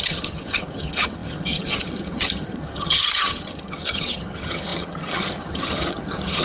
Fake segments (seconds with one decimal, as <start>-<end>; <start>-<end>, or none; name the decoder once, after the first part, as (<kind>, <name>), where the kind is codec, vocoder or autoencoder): 0.0-6.4 (vocoder, HiFi-GAN)